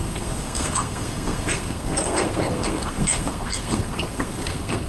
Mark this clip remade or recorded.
remade